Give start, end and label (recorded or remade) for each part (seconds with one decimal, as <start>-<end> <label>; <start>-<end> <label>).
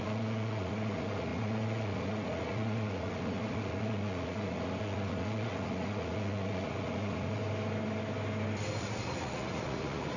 0.0-7.4 remade; 7.4-8.8 recorded; 8.8-10.2 remade